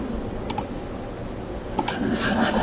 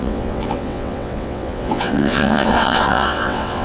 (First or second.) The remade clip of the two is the second